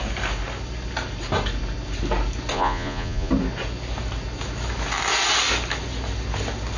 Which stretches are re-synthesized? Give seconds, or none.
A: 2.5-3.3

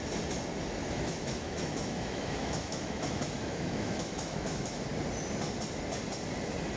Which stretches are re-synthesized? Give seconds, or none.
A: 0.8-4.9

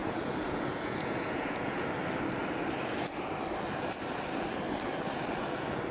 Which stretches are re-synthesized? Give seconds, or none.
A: 0.0-1.9

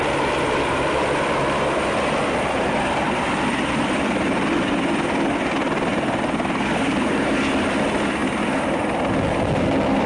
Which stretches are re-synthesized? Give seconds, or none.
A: none

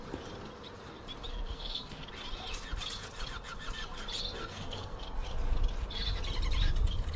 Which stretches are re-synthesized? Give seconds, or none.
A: 1.3-2.1; 4.4-5.0

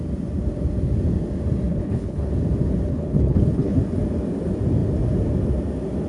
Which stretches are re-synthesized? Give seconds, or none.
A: 1.7-2.3; 2.9-3.8